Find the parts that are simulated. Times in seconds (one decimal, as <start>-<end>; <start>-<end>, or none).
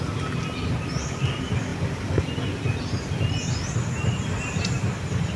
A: none